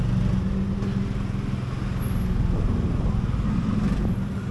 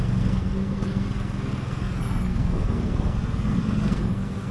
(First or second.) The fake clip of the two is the second